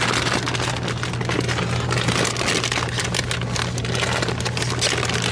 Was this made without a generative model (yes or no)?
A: yes